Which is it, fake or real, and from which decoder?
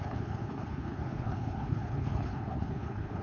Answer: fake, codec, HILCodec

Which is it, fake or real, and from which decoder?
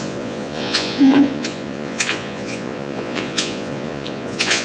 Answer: fake, vocoder, Vocos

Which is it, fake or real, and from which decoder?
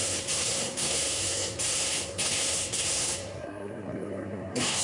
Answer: fake, codec, SNAC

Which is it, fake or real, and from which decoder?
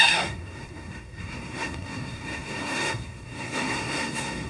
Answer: fake, codec, SNAC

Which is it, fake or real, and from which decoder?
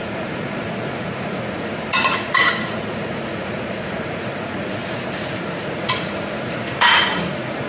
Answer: fake, vocoder, Vocos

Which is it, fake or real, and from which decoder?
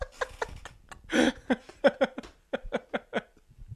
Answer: real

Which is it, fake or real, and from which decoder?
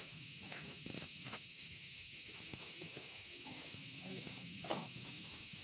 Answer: fake, autoencoder, DAC-VAE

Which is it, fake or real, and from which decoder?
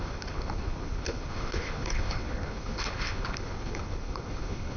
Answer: fake, codec, HILCodec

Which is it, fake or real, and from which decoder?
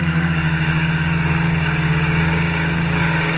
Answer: fake, codec, DAC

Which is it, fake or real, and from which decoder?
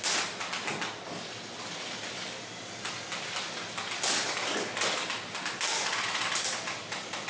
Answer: real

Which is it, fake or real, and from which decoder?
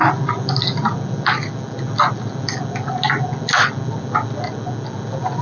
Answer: real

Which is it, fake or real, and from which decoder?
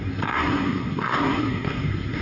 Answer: fake, codec, SNAC